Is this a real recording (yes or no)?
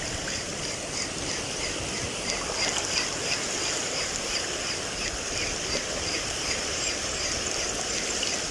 yes